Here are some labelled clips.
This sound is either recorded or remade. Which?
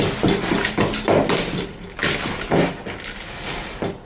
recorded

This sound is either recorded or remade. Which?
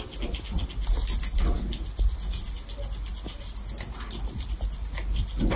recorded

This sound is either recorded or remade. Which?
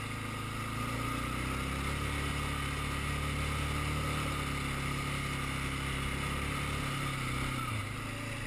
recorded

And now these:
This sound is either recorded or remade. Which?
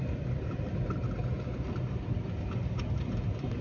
recorded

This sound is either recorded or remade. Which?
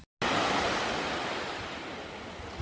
recorded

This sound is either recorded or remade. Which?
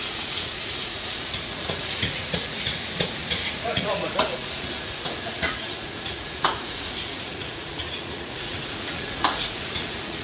remade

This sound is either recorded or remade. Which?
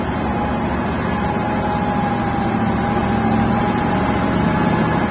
recorded